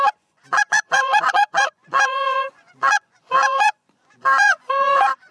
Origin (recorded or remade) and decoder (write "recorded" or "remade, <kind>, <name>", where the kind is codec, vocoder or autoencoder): remade, vocoder, Vocos